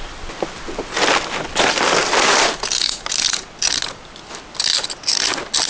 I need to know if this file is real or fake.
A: real